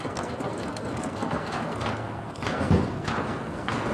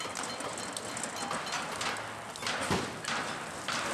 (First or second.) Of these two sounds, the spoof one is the first